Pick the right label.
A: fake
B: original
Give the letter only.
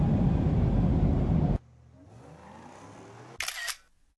B